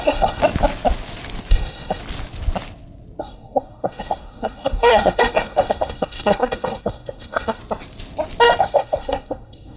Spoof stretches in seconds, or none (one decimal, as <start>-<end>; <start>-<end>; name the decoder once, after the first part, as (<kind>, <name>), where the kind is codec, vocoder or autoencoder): 0.0-0.4 (codec, SNAC); 1.5-2.0; 3.2-7.6; 8.6-9.8